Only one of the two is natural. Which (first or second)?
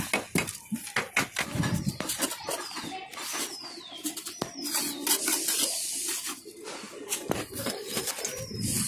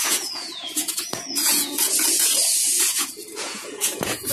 first